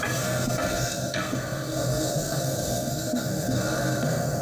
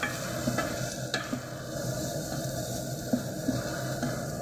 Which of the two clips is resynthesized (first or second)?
first